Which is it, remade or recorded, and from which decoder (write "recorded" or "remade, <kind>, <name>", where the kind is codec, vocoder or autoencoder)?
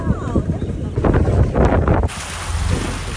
recorded